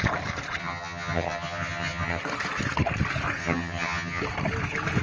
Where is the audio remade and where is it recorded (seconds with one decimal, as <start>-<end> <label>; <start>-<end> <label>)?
0.0-0.6 recorded; 0.6-2.2 remade; 2.2-3.4 recorded; 3.4-4.2 remade; 4.2-5.0 recorded